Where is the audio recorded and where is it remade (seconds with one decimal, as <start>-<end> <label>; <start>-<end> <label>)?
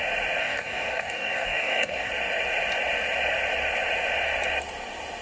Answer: 0.0-0.4 recorded; 0.4-2.1 remade; 2.1-5.2 recorded